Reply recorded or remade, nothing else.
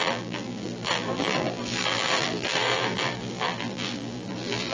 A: remade